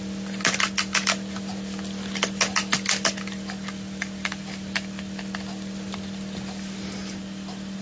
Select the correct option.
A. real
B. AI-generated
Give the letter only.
A